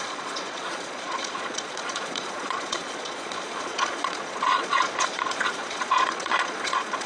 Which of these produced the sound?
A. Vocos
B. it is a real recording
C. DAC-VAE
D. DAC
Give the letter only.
A